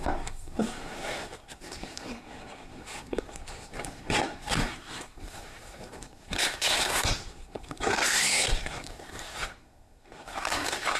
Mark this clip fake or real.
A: fake